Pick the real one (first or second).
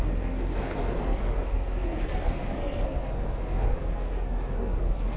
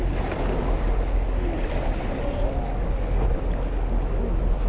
second